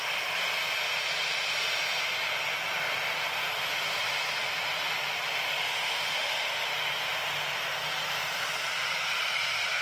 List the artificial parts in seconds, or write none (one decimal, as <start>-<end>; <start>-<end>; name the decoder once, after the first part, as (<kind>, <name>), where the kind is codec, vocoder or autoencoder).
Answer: 5.6-6.7 (autoencoder, DAC-VAE)